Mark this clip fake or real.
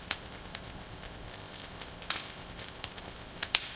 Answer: fake